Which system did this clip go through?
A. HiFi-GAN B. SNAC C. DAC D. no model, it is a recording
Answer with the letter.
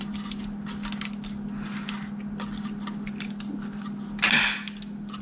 D